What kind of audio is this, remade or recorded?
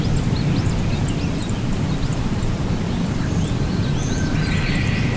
remade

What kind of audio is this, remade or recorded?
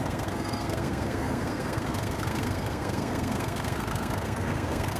remade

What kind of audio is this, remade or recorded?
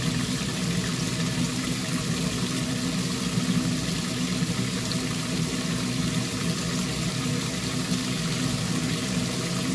recorded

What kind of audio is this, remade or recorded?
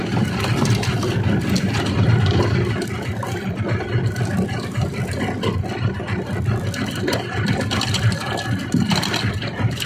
recorded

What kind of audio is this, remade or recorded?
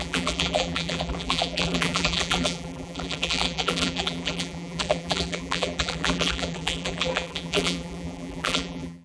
remade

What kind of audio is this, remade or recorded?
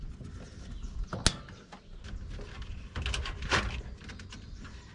recorded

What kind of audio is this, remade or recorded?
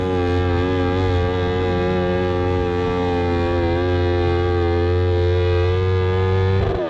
recorded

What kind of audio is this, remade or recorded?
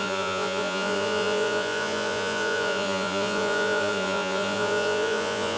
remade